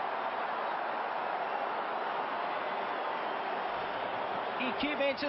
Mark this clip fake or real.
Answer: real